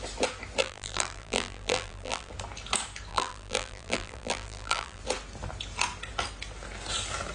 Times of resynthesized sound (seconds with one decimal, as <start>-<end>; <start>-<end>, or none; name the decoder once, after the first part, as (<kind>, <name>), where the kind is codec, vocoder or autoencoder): 0.6-2.3 (vocoder, BigVGAN v2); 3.1-5.0